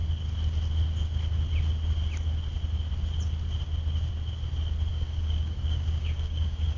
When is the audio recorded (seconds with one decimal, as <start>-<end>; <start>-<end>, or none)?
0.0-4.9